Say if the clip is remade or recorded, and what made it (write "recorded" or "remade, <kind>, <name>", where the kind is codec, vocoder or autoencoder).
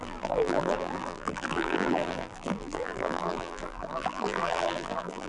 remade, vocoder, BigVGAN v2